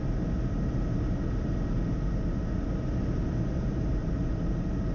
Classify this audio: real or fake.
real